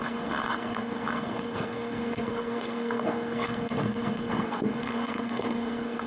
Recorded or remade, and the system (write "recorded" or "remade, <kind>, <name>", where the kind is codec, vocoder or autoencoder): remade, codec, SNAC